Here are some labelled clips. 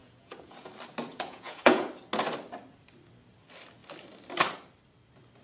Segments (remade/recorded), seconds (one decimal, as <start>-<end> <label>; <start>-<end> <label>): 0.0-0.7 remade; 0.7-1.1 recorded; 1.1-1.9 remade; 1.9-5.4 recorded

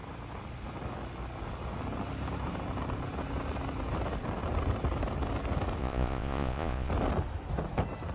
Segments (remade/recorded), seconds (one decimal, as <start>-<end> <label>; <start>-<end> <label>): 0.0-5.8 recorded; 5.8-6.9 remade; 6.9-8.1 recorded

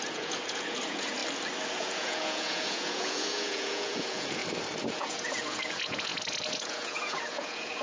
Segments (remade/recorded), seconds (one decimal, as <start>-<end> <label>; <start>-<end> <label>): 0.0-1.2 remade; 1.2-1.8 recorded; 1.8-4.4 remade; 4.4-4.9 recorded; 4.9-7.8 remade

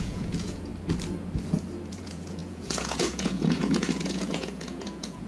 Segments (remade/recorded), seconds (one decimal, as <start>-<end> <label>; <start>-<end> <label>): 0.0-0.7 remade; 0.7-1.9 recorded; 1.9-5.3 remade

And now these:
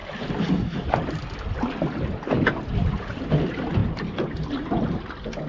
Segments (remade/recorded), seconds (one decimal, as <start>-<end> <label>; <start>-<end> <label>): 0.0-5.5 recorded

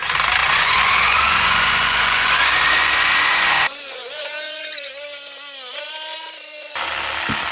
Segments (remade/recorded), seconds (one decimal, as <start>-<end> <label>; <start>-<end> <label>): 0.0-0.4 recorded; 0.4-4.9 remade; 4.9-7.5 recorded

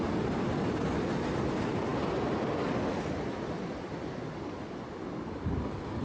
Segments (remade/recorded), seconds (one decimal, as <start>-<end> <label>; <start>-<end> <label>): 0.0-6.0 recorded

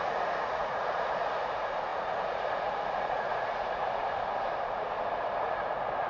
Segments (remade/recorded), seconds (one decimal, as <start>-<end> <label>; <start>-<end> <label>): 0.0-4.0 remade; 4.0-5.4 recorded; 5.4-6.1 remade